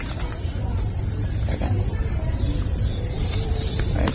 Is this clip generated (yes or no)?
yes